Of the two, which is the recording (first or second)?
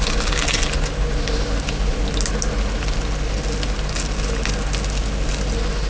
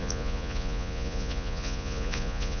first